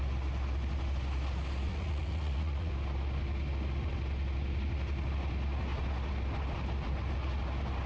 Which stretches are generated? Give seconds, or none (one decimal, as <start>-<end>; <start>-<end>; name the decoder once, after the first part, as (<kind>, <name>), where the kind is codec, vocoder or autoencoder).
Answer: 1.7-2.7 (vocoder, Vocos)